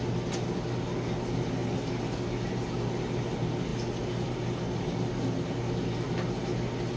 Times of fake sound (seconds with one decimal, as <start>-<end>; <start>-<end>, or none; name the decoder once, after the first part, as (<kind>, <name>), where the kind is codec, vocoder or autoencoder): none